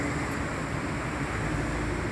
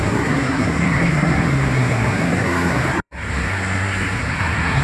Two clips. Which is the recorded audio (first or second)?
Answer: first